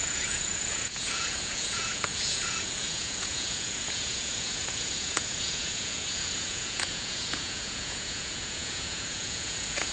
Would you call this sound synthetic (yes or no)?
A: yes